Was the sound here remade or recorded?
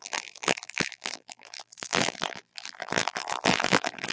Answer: remade